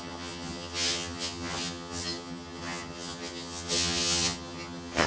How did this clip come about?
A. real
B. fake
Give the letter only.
B